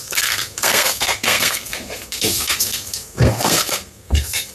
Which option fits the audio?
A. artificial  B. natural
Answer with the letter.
A